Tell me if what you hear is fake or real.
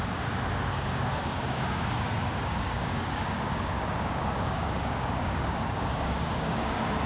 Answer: fake